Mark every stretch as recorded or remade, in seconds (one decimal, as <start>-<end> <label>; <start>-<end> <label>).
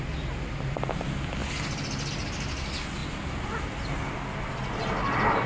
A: 0.0-5.5 recorded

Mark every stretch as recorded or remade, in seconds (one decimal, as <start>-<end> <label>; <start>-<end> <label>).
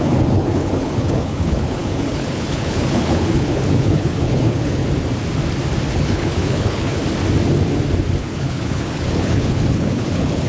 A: 0.0-4.8 remade; 4.8-5.9 recorded; 5.9-7.0 remade; 7.0-8.2 recorded; 8.2-10.5 remade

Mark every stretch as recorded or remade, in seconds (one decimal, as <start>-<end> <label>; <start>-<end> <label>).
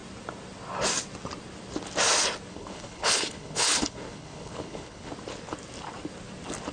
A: 0.0-2.5 recorded; 2.5-5.1 remade; 5.1-6.7 recorded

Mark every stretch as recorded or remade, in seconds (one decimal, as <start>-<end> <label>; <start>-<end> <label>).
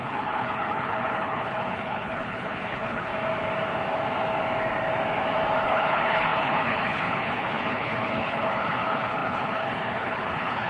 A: 0.0-3.1 remade; 3.1-5.6 recorded; 5.6-10.7 remade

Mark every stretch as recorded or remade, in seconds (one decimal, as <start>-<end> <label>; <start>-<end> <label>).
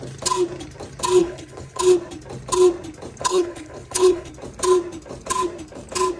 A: 0.0-1.2 recorded; 1.2-1.8 remade; 1.8-3.2 recorded; 3.2-4.3 remade; 4.3-6.2 recorded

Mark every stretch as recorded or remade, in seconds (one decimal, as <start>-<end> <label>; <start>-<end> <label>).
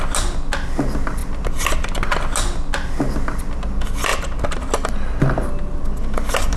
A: 0.0-6.6 recorded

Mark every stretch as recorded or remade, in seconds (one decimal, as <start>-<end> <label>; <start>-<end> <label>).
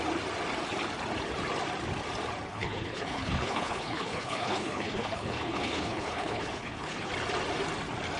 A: 0.0-2.5 recorded; 2.5-7.1 remade; 7.1-8.2 recorded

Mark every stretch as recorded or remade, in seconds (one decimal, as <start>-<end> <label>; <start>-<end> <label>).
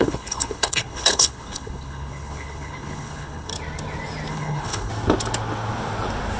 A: 0.0-3.5 remade; 3.5-4.3 recorded; 4.3-4.9 remade; 4.9-6.4 recorded